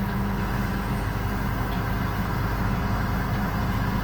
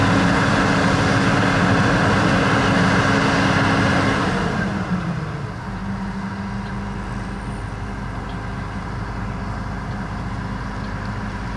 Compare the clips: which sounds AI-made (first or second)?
first